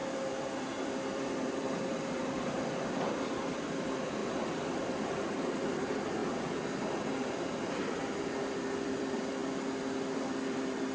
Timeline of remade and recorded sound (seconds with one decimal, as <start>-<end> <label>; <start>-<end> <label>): 0.0-0.8 recorded; 0.8-6.2 remade; 6.2-8.2 recorded; 8.2-9.4 remade; 9.4-10.5 recorded; 10.5-10.9 remade